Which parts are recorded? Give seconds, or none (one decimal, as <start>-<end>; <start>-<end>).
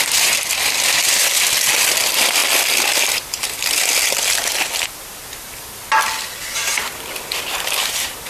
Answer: none